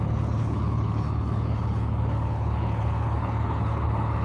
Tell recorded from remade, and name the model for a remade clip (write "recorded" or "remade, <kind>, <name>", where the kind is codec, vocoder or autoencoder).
remade, codec, HILCodec